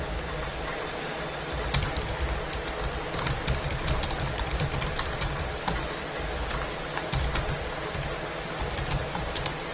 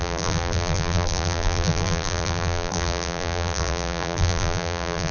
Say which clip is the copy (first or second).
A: second